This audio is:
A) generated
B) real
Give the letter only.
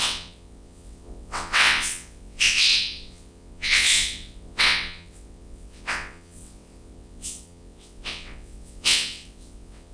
A